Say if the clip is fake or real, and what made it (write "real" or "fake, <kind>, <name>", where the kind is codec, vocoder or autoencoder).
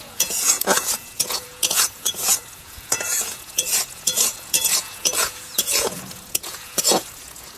fake, vocoder, Vocos